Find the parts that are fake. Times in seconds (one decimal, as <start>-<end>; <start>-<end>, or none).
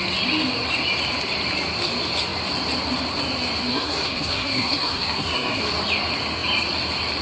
3.7-5.6